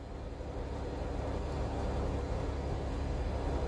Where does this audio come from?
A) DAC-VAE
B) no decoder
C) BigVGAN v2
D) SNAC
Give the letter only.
B